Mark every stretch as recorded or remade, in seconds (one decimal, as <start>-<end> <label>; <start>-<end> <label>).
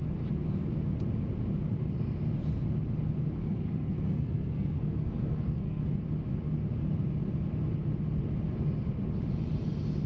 0.0-3.4 recorded; 3.4-5.8 remade; 5.8-10.1 recorded